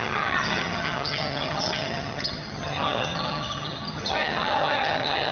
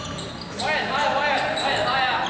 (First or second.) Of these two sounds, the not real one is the first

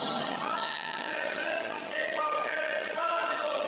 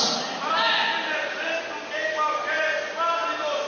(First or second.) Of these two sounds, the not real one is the first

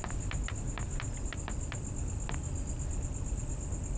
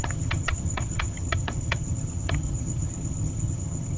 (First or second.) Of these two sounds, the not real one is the second